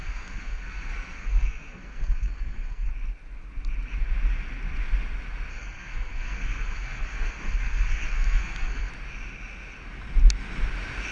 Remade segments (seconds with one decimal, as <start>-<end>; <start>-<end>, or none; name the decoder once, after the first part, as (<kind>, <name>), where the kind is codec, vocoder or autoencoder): 0.0-2.9 (codec, SNAC); 5.5-8.9